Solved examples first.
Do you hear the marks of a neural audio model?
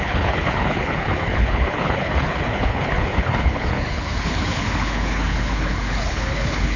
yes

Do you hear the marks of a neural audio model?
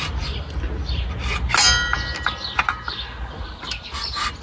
no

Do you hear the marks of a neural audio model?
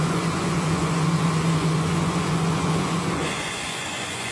yes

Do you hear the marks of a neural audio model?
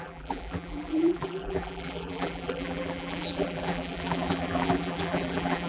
yes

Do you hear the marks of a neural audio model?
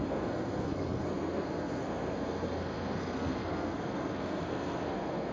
yes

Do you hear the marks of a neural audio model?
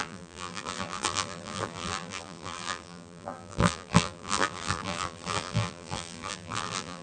yes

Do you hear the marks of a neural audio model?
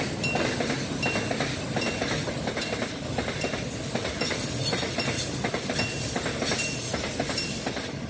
no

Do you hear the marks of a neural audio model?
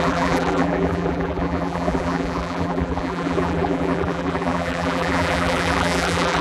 yes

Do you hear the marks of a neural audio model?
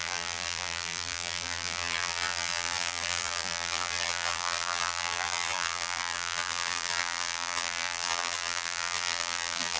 yes